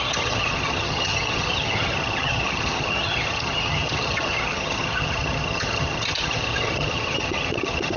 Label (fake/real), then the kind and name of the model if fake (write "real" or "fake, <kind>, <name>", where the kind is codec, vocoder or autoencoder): fake, vocoder, HiFi-GAN